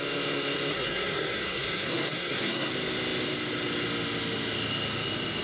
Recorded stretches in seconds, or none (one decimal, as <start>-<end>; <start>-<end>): 0.0-0.7; 2.7-5.4